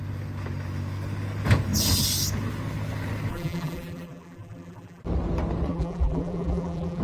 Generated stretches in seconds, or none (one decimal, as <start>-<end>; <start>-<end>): 3.3-5.0; 5.7-7.0